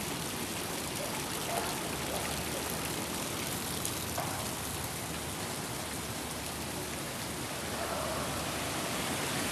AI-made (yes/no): no